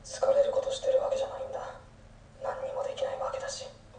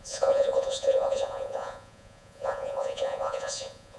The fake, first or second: second